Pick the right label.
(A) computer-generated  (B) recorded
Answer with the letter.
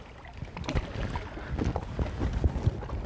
B